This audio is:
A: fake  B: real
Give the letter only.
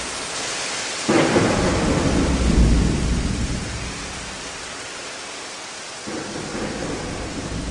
B